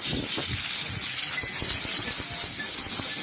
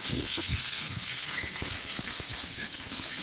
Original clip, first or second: first